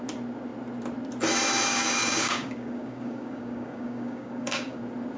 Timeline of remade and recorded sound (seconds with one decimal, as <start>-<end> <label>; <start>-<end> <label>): 0.0-1.7 recorded; 1.7-4.8 remade; 4.8-5.2 recorded